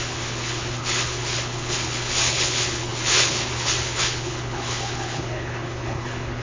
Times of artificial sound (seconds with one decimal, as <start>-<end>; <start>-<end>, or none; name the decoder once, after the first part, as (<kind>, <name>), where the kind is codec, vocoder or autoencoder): 0.0-6.4 (codec, HILCodec)